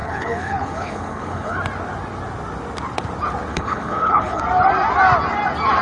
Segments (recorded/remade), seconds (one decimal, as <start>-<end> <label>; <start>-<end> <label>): 0.0-1.6 remade; 1.6-3.5 recorded; 3.5-4.4 remade; 4.4-5.8 recorded